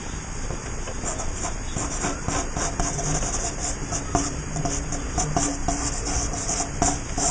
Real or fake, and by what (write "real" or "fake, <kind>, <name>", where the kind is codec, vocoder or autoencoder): fake, vocoder, BigVGAN v2